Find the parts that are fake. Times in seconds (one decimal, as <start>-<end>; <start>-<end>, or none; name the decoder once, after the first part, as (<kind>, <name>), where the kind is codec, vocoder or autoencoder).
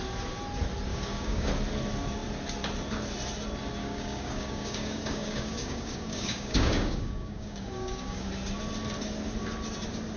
0.9-1.5 (codec, DAC); 3.8-8.3